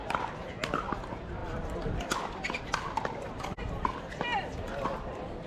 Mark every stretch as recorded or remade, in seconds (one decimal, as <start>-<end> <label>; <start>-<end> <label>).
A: 0.0-1.4 recorded; 1.4-4.7 remade; 4.7-5.5 recorded